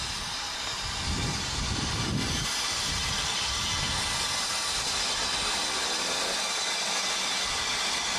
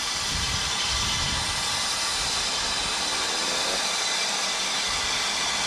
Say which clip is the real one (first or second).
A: first